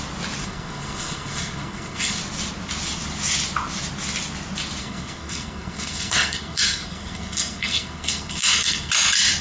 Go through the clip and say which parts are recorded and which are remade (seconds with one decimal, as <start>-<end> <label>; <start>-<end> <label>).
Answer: 0.0-0.4 recorded; 0.4-2.2 remade; 2.2-4.8 recorded; 4.8-8.9 remade; 8.9-9.4 recorded